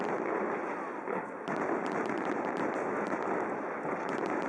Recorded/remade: recorded